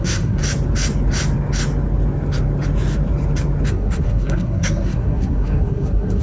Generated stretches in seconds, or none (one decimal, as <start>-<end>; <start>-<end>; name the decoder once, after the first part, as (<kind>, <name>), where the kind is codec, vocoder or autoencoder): 0.0-0.4 (codec, SNAC); 3.7-6.2